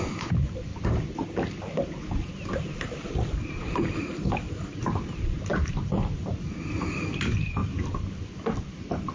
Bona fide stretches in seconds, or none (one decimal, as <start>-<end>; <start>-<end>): 0.7-2.5; 4.4-5.5; 7.6-8.6